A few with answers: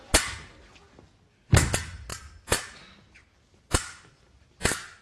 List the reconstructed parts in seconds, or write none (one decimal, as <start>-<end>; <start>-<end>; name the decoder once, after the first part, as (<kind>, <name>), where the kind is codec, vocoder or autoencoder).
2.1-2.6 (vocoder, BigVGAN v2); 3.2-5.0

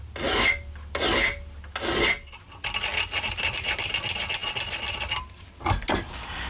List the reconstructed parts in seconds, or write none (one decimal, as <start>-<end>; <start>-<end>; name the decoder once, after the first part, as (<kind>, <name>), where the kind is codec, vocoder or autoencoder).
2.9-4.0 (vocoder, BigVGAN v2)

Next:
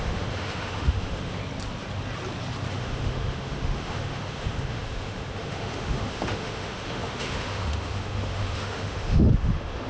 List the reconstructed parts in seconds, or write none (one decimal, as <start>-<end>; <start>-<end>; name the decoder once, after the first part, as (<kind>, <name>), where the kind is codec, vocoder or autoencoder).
0.0-1.4 (autoencoder, DAC-VAE); 2.7-9.9

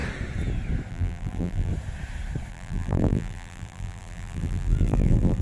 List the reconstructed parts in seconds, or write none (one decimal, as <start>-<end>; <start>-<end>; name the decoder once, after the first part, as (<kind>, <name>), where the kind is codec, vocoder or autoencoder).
0.9-1.7 (vocoder, BigVGAN v2); 2.5-5.4

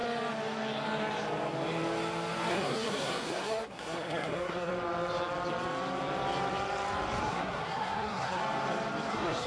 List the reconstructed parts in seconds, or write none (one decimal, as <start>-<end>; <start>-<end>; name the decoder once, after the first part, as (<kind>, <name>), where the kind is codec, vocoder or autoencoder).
2.5-4.7 (codec, SNAC); 7.2-8.4; 9.1-9.5

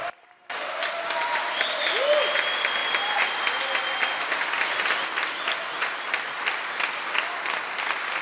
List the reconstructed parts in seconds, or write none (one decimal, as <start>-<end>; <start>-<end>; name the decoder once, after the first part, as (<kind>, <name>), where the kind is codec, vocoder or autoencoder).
none

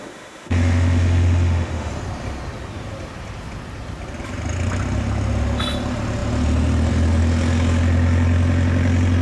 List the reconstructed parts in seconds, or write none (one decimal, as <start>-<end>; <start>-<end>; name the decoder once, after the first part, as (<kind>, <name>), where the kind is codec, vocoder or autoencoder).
0.0-1.9 (autoencoder, DAC-VAE)

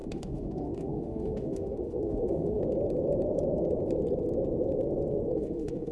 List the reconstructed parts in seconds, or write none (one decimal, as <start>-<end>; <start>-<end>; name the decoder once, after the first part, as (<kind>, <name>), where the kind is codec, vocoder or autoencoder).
0.0-2.6 (autoencoder, DAC-VAE); 5.3-5.9